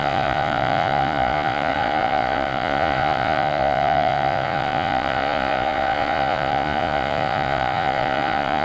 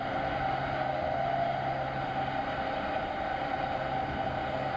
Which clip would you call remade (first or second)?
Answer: first